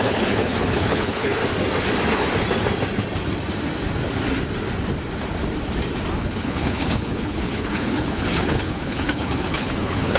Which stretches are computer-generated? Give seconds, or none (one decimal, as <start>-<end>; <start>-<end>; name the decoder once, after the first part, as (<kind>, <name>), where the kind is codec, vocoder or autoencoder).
0.0-1.4 (codec, HILCodec); 6.2-10.2